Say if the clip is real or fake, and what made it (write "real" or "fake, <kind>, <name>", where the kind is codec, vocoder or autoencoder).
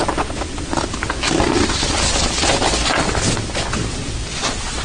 real